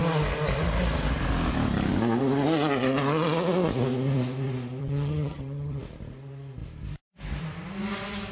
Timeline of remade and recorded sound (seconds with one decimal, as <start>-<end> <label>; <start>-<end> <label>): 0.0-4.8 recorded; 4.8-5.8 remade; 5.8-8.3 recorded

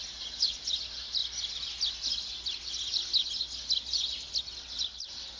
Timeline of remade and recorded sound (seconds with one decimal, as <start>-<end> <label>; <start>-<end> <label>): 0.0-5.4 recorded

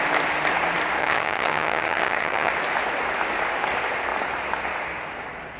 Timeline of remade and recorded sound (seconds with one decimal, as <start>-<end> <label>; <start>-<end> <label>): 0.0-1.0 recorded; 1.0-2.5 remade; 2.5-5.6 recorded

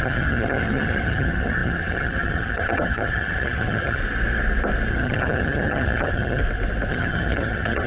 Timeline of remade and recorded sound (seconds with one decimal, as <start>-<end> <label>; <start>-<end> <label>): 0.0-4.0 remade; 4.0-4.9 recorded; 4.9-6.4 remade; 6.4-6.9 recorded; 6.9-7.9 remade

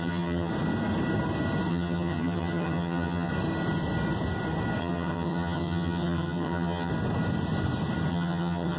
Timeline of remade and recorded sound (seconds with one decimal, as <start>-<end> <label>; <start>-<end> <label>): 0.0-0.5 remade; 0.5-1.7 recorded; 1.7-3.3 remade; 3.3-4.8 recorded; 4.8-6.9 remade; 6.9-8.1 recorded; 8.1-8.8 remade

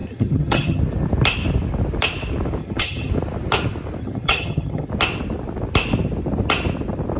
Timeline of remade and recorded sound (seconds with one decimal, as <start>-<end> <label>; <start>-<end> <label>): 0.0-0.8 remade; 0.8-2.6 recorded; 2.6-3.1 remade; 3.1-4.0 recorded; 4.0-4.9 remade; 4.9-7.2 recorded

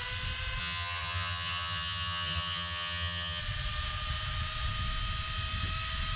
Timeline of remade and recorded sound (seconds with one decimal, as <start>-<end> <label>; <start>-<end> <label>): 0.0-0.6 recorded; 0.6-3.4 remade; 3.4-6.2 recorded

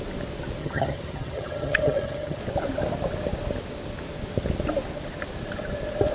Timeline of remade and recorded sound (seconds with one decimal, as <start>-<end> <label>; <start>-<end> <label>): 0.0-0.6 recorded; 0.6-2.4 remade; 2.4-6.1 recorded